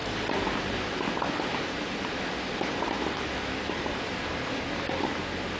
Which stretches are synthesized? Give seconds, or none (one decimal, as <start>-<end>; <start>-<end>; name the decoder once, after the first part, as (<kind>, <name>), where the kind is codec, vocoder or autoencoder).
none